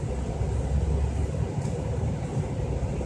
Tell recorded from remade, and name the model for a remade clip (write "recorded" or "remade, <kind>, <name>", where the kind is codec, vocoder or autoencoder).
recorded